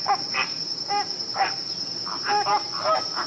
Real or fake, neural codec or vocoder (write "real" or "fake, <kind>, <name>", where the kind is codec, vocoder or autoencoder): fake, vocoder, BigVGAN v2